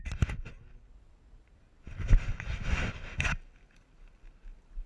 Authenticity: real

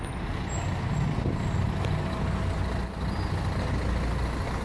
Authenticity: real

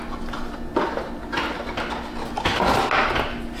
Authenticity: real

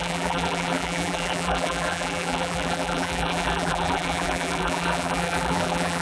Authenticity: fake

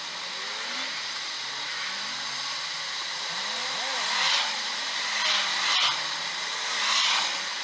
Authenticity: real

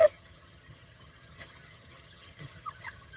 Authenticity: fake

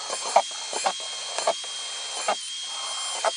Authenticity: real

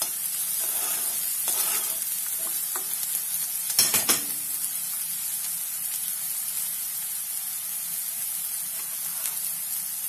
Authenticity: real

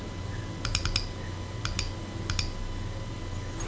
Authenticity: real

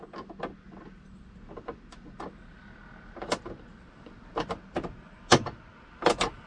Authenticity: real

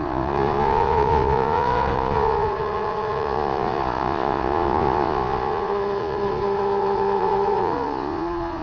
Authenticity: fake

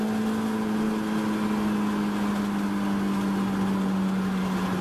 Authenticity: real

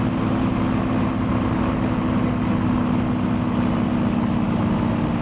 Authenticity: real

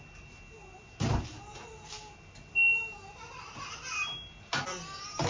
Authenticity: real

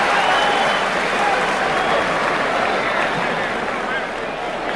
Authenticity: real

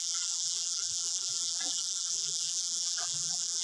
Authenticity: fake